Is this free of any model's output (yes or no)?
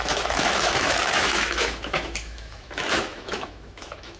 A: no